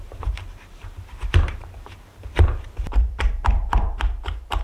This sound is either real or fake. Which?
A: fake